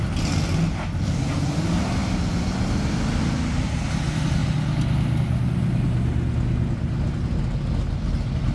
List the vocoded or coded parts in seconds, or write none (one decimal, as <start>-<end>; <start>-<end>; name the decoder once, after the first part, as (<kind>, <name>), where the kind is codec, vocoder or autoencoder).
none